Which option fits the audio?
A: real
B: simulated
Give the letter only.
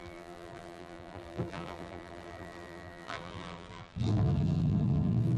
B